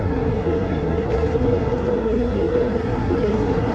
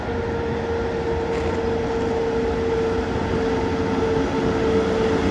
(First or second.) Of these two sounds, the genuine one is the second